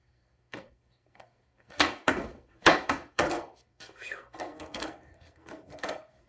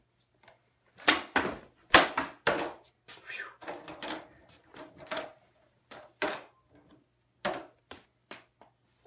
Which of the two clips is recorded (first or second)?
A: second